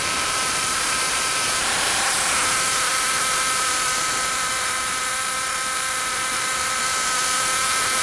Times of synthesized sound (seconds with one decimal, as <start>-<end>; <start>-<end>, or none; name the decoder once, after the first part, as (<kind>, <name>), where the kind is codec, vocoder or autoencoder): 0.0-1.3 (vocoder, BigVGAN v2); 2.9-6.9